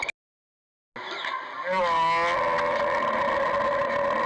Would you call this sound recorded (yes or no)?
yes